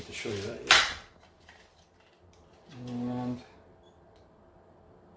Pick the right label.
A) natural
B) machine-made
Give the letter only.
B